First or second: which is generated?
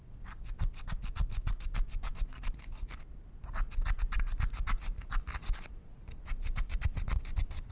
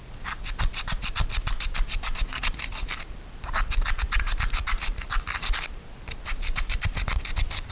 second